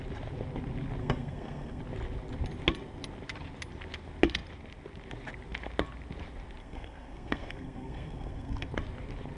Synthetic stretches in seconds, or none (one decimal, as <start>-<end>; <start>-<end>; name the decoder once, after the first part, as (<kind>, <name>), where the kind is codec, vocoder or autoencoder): 1.0-1.8 (codec, SNAC); 6.6-8.7